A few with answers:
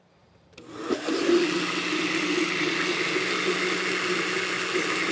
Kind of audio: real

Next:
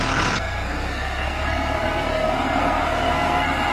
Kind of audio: fake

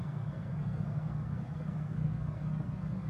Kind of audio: fake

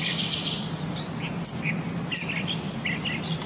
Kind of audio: real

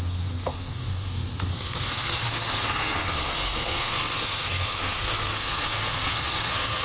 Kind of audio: fake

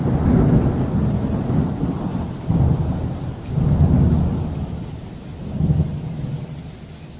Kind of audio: real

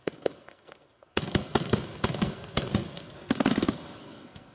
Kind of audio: fake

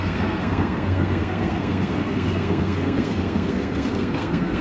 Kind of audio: fake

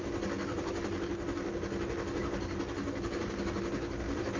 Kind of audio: real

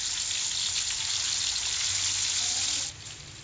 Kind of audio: real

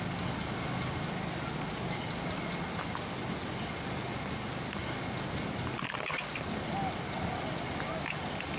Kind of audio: real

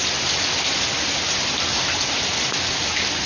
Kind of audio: real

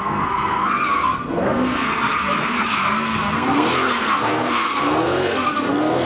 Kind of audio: fake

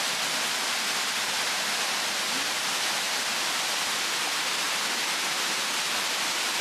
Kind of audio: real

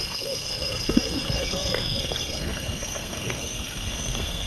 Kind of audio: fake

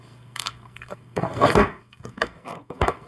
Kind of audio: fake